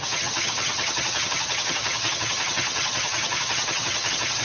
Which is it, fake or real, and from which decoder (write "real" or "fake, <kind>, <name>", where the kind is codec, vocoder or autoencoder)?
fake, vocoder, HiFi-GAN